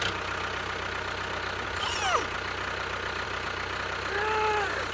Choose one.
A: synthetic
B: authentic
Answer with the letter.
B